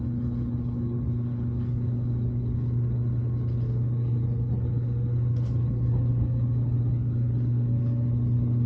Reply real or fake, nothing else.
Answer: fake